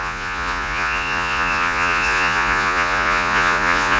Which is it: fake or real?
fake